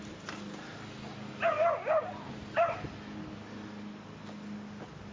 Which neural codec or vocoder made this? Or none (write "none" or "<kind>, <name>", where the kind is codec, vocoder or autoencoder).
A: none